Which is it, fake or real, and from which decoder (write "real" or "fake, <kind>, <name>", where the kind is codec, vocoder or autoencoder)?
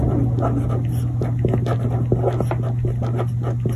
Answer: real